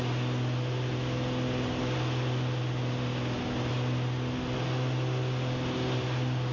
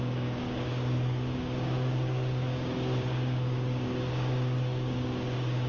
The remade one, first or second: second